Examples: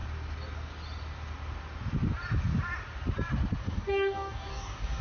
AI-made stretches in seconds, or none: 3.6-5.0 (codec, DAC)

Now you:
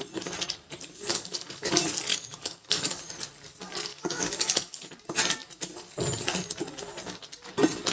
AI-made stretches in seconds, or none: 1.1-1.7 (codec, DAC); 2.1-3.0; 3.9-4.9

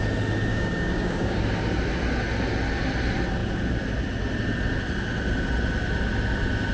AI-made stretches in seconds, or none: 0.5-1.4 (codec, DAC)

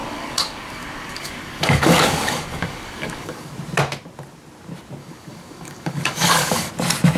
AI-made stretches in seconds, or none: 0.0-3.5 (codec, DAC); 5.0-6.7

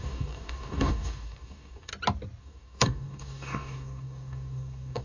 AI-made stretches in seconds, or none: 0.0-1.9 (codec, DAC); 2.4-5.0

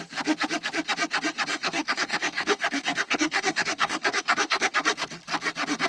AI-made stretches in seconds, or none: 1.5-4.7 (codec, DAC)

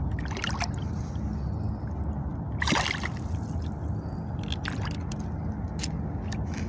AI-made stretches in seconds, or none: none